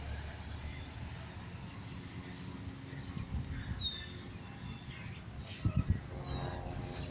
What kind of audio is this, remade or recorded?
recorded